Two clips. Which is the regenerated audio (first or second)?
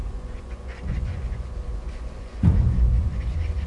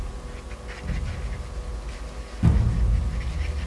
first